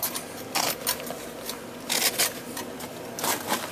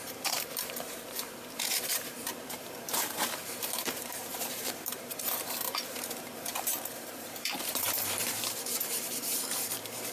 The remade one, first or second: second